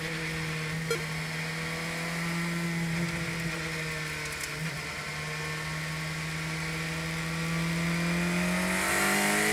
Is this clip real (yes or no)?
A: yes